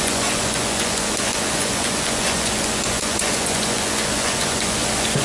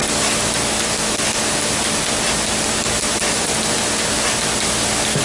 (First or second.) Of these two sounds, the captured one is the second